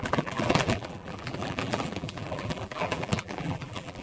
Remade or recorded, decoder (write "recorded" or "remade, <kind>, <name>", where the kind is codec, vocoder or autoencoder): remade, vocoder, BigVGAN v2